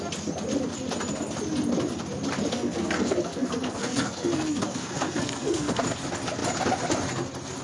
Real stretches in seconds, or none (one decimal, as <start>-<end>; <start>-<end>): 0.0-2.5; 5.8-7.6

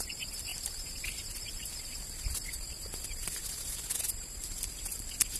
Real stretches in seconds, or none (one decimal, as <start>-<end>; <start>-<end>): 0.0-5.4

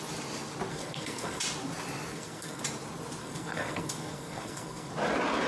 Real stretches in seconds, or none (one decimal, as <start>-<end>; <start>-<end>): 0.0-0.7; 1.4-2.1; 2.6-3.2; 4.9-5.5

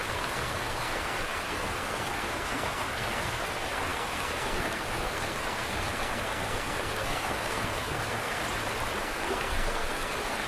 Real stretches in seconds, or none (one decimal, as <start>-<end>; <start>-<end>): 8.4-9.0

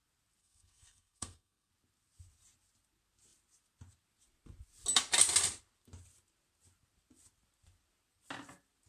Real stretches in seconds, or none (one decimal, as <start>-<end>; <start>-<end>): 0.0-0.4; 1.7-8.9

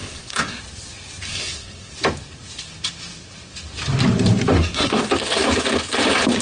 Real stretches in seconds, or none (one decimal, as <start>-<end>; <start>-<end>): 0.6-1.3; 1.9-4.5; 5.1-6.4